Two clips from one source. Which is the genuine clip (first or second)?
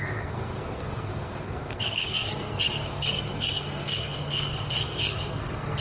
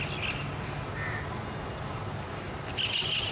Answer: second